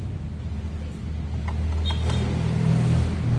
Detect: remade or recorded recorded